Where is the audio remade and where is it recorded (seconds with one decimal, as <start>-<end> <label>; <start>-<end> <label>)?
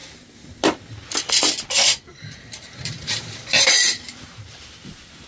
0.0-2.1 recorded; 2.1-4.6 remade; 4.6-5.3 recorded